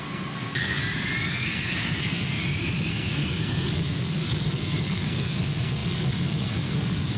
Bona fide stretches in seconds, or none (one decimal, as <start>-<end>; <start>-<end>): 0.8-1.3; 2.4-2.9